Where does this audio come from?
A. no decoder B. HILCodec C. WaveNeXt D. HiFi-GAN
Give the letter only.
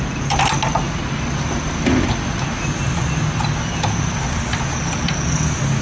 A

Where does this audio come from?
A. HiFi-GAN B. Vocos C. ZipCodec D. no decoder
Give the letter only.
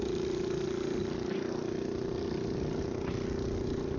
D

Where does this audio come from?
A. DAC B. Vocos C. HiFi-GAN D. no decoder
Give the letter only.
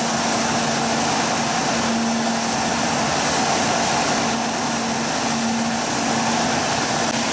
D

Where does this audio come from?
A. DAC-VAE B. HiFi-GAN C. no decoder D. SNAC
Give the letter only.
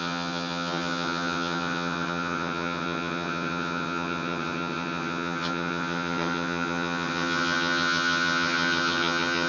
B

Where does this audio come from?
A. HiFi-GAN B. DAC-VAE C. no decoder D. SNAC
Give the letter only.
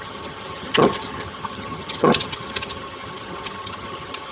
A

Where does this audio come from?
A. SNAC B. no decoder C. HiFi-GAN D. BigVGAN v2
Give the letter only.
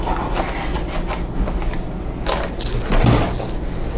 B